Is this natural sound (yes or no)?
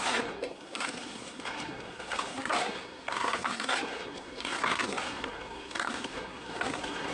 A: no